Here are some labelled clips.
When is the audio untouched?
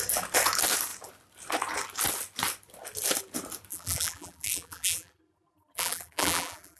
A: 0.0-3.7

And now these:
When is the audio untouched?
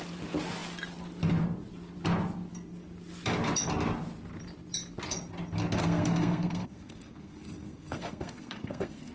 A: 0.0-5.8